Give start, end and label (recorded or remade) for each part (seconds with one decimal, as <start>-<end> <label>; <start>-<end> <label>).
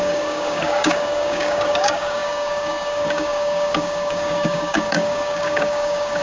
0.0-6.2 remade